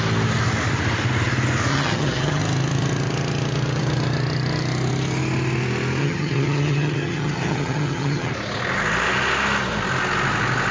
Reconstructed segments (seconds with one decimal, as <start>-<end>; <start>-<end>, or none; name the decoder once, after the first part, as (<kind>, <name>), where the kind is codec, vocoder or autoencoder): 1.7-2.4 (vocoder, HiFi-GAN); 6.0-8.3